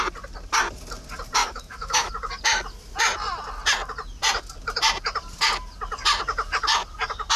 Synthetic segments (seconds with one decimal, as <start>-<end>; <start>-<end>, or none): 1.4-2.1